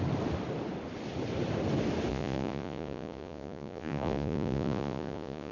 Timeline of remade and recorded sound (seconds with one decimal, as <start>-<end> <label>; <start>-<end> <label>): 0.0-2.1 recorded; 2.1-5.5 remade